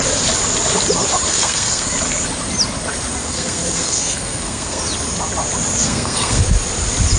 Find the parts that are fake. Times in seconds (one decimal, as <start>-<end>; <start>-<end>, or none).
1.3-1.9; 3.2-4.8; 5.8-6.4